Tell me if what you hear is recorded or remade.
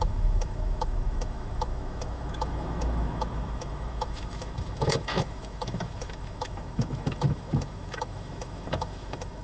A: remade